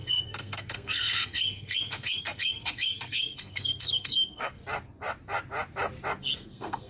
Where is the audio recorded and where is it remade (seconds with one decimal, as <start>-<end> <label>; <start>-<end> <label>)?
0.0-4.6 remade; 4.6-6.2 recorded; 6.2-6.9 remade

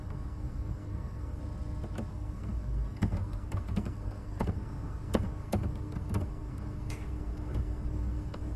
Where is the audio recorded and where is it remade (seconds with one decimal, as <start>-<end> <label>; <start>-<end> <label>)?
0.0-1.4 remade; 1.4-2.1 recorded; 2.1-8.6 remade